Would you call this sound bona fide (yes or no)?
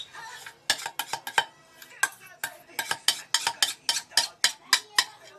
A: yes